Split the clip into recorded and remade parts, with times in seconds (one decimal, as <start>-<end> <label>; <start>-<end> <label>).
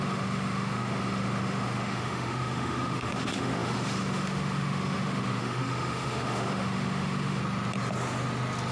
0.0-7.4 remade; 7.4-8.7 recorded